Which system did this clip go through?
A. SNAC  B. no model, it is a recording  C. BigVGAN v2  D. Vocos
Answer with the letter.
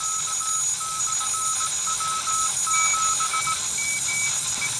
B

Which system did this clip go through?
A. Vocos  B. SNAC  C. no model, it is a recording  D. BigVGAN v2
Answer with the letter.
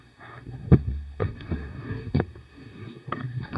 B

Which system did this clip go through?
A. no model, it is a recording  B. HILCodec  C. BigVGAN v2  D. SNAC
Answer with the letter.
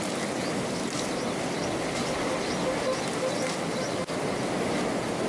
A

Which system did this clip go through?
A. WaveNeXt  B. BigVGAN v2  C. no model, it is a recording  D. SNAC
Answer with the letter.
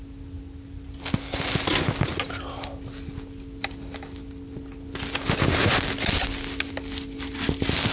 C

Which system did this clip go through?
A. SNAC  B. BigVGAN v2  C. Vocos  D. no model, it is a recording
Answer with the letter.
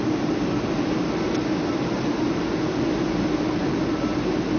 D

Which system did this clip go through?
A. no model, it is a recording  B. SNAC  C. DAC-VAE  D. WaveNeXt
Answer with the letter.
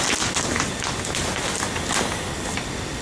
A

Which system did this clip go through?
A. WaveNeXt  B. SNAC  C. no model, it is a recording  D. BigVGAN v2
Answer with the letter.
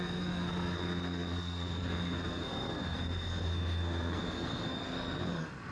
B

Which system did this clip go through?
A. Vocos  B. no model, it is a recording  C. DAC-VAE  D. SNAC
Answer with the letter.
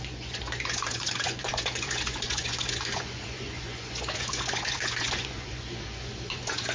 A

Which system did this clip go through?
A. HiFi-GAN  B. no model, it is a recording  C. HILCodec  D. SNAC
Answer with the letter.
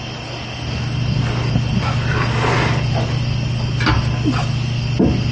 B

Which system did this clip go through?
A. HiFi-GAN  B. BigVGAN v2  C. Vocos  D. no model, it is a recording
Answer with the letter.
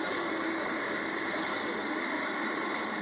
B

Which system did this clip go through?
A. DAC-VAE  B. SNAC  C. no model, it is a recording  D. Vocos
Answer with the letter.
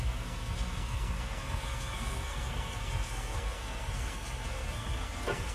B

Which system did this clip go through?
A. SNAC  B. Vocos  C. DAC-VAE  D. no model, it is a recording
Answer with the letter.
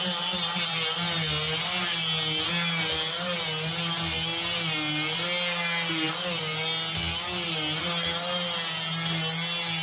D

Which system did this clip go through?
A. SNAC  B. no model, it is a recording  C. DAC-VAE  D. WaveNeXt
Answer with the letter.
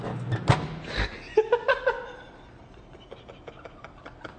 B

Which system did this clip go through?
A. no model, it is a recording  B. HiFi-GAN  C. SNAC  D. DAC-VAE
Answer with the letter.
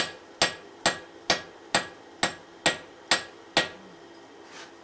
A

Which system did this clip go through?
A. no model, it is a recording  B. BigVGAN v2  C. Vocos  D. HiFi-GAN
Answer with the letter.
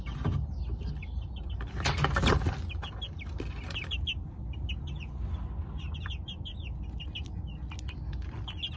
A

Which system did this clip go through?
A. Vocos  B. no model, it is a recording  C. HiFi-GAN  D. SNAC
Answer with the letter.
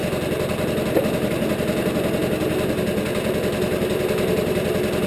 B